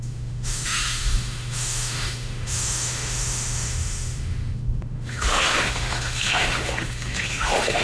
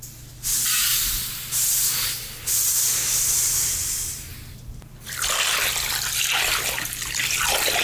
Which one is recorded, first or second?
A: second